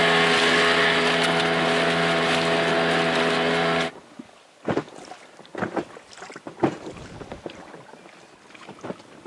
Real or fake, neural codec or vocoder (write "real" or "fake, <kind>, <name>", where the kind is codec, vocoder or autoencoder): real